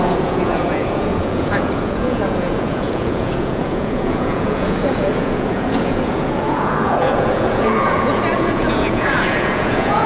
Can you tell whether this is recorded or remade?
remade